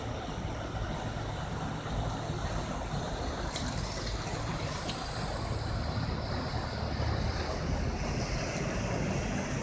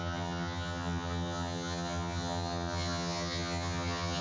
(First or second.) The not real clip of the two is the second